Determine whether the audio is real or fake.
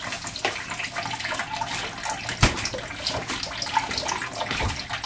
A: real